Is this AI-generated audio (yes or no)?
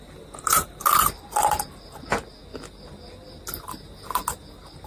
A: no